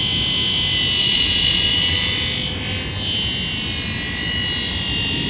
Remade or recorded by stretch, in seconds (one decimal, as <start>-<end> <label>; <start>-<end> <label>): 0.0-1.0 recorded; 1.0-2.1 remade; 2.1-5.3 recorded